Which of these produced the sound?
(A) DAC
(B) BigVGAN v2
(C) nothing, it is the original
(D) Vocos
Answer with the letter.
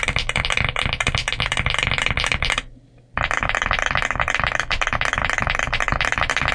C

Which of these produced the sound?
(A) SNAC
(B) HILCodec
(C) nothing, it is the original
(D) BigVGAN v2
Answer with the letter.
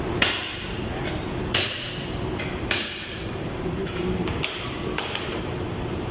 D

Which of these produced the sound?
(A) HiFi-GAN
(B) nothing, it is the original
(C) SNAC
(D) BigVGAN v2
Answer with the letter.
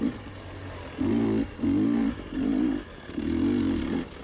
B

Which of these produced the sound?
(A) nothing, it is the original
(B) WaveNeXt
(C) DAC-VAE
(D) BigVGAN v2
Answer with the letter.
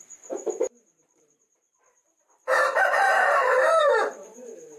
D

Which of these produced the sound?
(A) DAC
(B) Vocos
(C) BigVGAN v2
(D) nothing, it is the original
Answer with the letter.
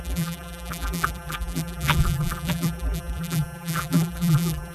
C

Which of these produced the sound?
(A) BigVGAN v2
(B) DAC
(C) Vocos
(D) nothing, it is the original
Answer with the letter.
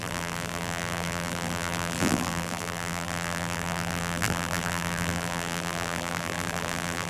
A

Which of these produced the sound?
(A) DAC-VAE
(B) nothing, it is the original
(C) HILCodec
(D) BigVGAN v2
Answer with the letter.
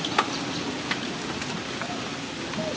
B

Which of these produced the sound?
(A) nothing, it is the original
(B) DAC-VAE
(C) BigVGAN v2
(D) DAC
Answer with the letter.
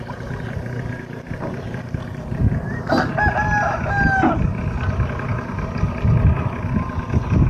A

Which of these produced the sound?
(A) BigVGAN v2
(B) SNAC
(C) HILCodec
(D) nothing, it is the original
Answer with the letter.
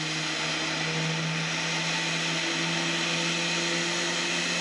D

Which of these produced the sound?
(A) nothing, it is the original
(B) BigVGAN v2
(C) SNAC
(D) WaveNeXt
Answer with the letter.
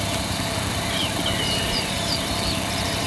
B